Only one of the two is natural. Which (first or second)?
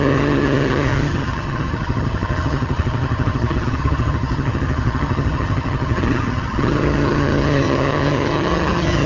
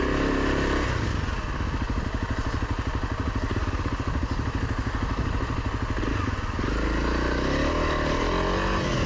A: second